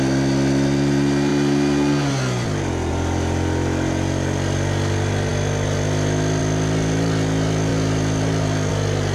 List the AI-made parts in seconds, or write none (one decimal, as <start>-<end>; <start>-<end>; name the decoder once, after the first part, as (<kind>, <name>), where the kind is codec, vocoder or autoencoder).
7.7-8.7 (vocoder, BigVGAN v2)